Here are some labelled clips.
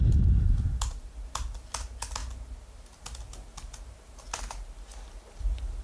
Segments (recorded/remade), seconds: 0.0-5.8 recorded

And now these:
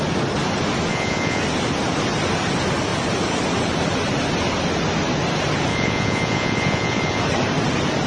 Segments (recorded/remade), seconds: 0.0-0.9 recorded; 0.9-1.4 remade; 1.4-5.7 recorded; 5.7-7.2 remade; 7.2-8.1 recorded

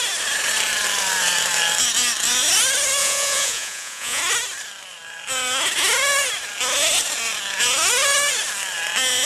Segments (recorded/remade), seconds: 0.0-3.0 recorded; 3.0-4.2 remade; 4.2-9.3 recorded

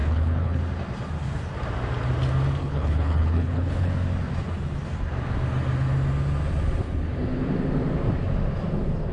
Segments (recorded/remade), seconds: 0.0-0.6 remade; 0.6-2.6 recorded; 2.6-3.9 remade; 3.9-9.1 recorded

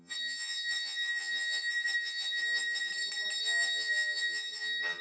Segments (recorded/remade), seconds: 0.0-2.9 remade; 2.9-3.4 recorded; 3.4-5.0 remade